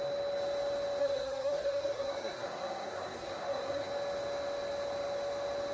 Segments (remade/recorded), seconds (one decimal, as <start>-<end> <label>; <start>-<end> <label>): 0.0-1.0 recorded; 1.0-3.9 remade; 3.9-5.7 recorded